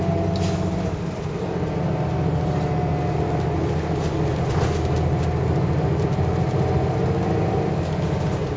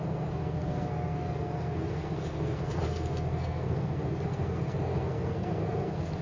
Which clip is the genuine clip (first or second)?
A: first